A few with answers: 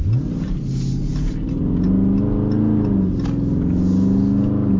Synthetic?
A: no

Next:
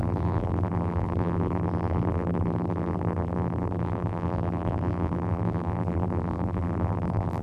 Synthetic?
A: yes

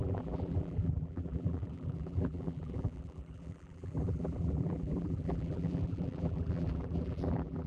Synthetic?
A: yes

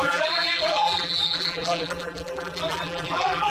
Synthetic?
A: yes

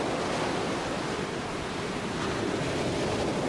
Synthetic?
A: no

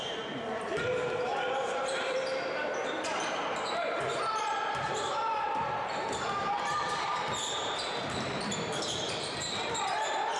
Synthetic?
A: yes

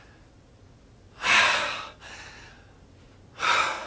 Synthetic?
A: no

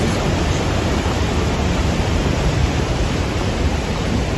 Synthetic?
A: yes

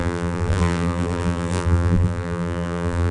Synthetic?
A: yes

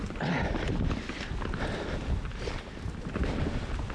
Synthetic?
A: no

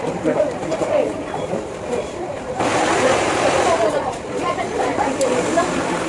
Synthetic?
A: yes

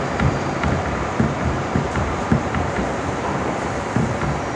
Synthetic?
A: yes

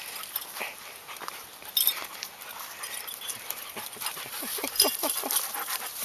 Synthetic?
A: yes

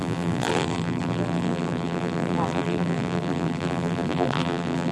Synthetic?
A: yes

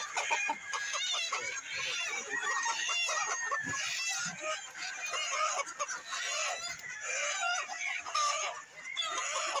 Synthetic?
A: no